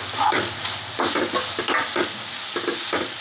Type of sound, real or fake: real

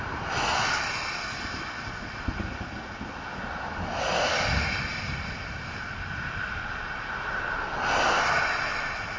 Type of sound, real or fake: real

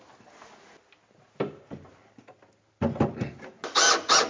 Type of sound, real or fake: real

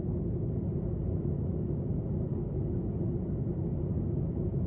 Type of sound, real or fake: real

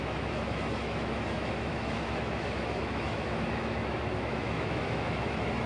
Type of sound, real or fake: fake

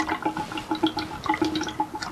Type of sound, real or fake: real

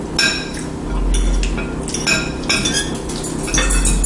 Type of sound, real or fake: real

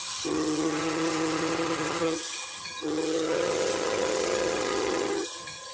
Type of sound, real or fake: fake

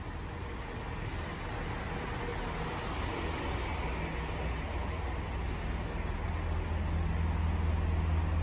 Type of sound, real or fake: real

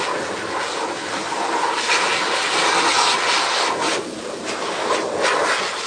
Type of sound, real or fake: real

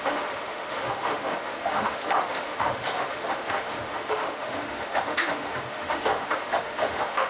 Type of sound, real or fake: fake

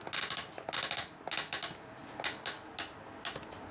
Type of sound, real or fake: real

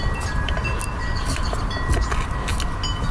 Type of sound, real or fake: real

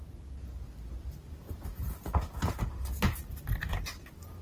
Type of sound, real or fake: real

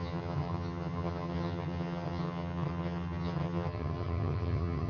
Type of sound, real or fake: fake